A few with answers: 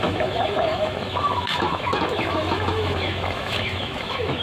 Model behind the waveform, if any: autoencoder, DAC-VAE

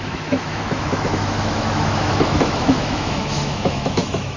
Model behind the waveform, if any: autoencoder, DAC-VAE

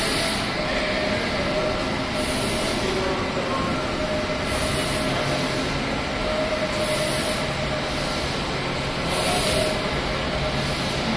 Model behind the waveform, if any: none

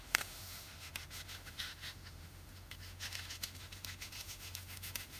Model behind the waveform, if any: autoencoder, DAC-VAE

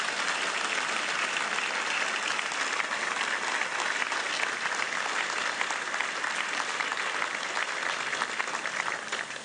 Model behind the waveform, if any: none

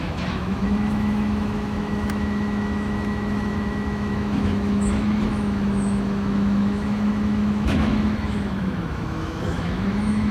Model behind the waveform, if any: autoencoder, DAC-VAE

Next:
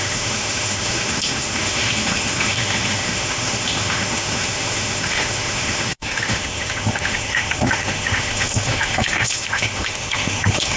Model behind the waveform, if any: autoencoder, DAC-VAE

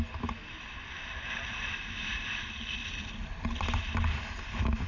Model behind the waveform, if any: none